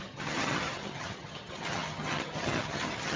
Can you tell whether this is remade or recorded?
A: remade